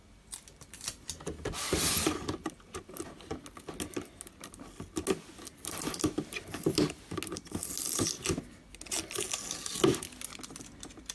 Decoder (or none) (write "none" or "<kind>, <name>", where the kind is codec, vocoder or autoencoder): none